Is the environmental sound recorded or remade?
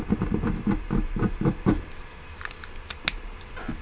recorded